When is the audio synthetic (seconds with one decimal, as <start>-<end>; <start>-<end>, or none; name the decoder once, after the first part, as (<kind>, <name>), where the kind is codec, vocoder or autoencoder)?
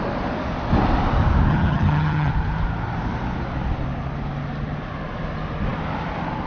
1.5-2.3 (vocoder, HiFi-GAN)